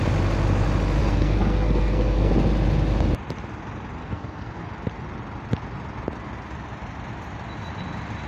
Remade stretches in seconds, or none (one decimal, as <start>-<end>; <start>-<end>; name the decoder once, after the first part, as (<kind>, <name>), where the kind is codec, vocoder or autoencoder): 1.0-2.3 (codec, SNAC); 4.0-4.6